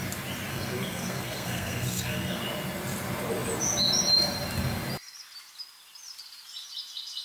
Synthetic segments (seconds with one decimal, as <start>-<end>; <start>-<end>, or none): 0.5-2.4